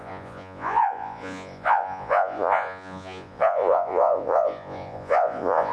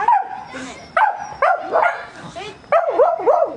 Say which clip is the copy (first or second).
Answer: first